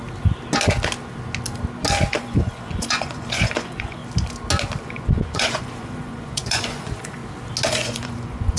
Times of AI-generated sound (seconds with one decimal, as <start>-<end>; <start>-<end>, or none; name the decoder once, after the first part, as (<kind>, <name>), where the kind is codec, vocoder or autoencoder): 2.1-4.0 (vocoder, Vocos); 4.8-7.2; 7.7-8.6